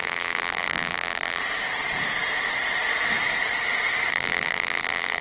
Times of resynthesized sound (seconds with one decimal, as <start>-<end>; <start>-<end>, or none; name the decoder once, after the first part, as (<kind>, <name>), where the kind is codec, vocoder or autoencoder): 0.0-1.4 (vocoder, BigVGAN v2); 4.1-5.2